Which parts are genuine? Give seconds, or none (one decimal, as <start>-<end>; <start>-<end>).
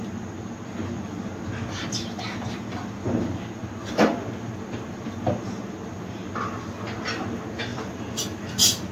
0.0-7.7